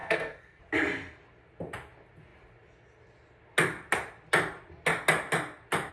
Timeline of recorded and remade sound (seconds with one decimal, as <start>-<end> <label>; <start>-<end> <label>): 0.0-0.6 remade; 0.6-5.9 recorded

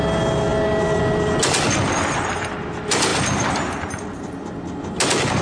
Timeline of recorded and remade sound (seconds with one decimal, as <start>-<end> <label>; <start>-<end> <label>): 0.0-5.4 recorded

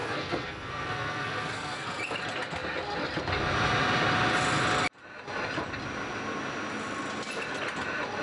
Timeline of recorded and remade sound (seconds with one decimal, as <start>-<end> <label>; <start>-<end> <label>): 0.0-2.0 remade; 2.0-8.2 recorded

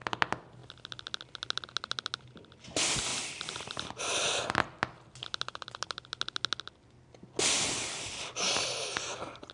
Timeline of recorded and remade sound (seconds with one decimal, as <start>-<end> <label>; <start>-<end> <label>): 0.0-9.5 recorded

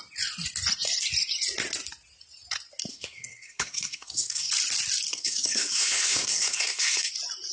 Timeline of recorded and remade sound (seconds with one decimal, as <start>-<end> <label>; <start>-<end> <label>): 0.0-2.9 recorded; 2.9-4.5 remade; 4.5-5.1 recorded; 5.1-7.1 remade; 7.1-7.5 recorded

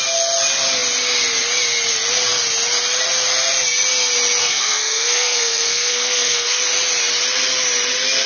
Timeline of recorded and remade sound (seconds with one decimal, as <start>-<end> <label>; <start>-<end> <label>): 0.0-4.4 recorded; 4.4-6.6 remade; 6.6-8.3 recorded

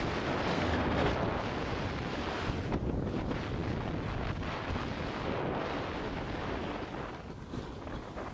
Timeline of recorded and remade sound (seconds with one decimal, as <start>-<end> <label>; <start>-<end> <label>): 0.0-0.5 recorded; 0.5-1.1 remade; 1.1-8.3 recorded

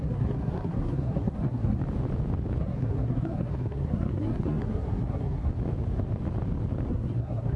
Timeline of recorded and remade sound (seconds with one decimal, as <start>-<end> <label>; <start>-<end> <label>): 0.0-1.8 remade; 1.8-2.6 recorded; 2.6-5.5 remade; 5.5-6.9 recorded; 6.9-7.6 remade